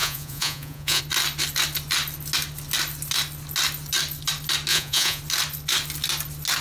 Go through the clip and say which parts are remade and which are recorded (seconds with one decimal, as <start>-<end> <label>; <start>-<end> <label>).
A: 0.0-1.0 remade; 1.0-4.7 recorded; 4.7-5.2 remade; 5.2-6.6 recorded